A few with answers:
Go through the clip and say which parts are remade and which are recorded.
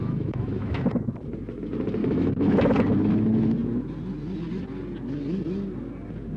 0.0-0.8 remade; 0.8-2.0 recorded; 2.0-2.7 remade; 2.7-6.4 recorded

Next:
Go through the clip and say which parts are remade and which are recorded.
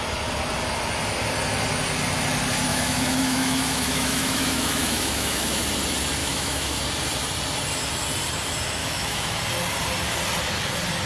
0.0-2.7 recorded; 2.7-5.6 remade; 5.6-6.2 recorded; 6.2-6.8 remade; 6.8-8.8 recorded; 8.8-9.4 remade; 9.4-11.1 recorded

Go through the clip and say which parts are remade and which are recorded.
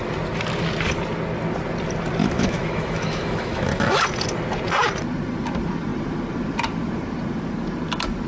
0.0-2.2 recorded; 2.2-4.0 remade; 4.0-8.3 recorded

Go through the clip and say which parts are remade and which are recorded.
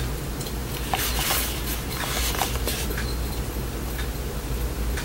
0.0-5.0 recorded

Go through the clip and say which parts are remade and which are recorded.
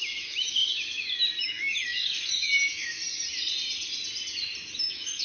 0.0-0.6 remade; 0.6-1.4 recorded; 1.4-3.0 remade; 3.0-4.8 recorded; 4.8-5.2 remade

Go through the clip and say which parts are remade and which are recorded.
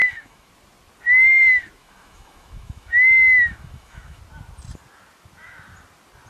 0.0-0.5 remade; 0.5-1.8 recorded; 1.8-4.2 remade; 4.2-6.3 recorded